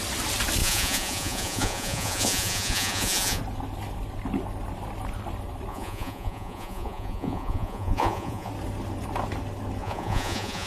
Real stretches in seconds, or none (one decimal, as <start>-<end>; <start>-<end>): 0.0-0.6; 3.4-5.7; 8.5-9.8